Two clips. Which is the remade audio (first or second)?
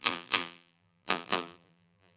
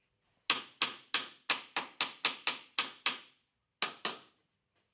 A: first